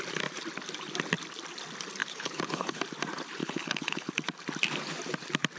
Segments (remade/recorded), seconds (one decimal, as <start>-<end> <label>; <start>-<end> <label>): 0.0-2.0 recorded; 2.0-2.8 remade; 2.8-3.4 recorded; 3.4-4.1 remade; 4.1-5.6 recorded